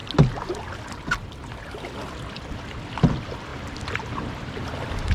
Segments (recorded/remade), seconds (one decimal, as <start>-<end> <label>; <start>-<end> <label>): 0.0-5.1 recorded